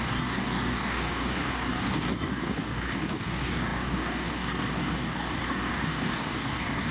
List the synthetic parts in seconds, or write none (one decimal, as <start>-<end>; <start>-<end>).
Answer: 0.0-6.9